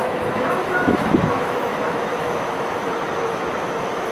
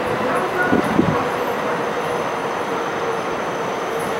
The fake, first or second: first